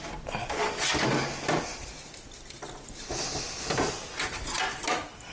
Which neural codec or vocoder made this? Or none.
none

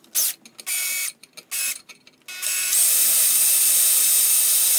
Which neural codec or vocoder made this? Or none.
none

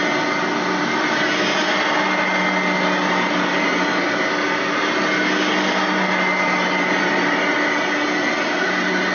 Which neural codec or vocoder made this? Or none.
none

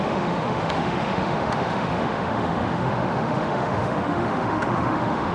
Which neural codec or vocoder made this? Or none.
autoencoder, DAC-VAE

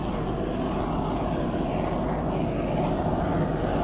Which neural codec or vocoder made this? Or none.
none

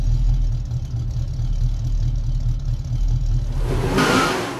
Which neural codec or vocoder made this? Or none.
none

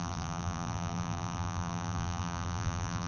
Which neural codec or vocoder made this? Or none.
vocoder, BigVGAN v2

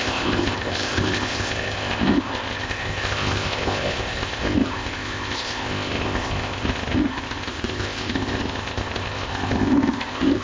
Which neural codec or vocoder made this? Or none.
codec, ZipCodec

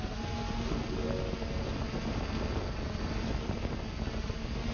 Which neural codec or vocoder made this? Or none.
none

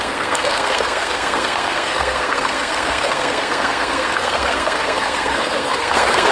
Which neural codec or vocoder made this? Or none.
codec, SNAC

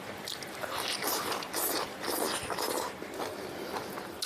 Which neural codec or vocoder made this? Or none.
none